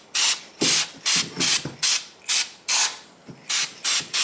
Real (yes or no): yes